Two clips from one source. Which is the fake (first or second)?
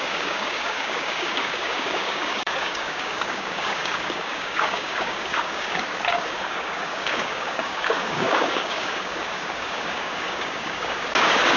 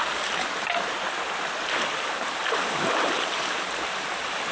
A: first